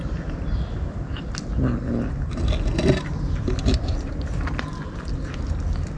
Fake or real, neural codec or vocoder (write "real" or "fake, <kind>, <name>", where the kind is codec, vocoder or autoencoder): real